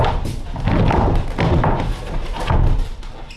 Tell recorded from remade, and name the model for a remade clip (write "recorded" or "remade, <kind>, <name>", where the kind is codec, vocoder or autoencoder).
recorded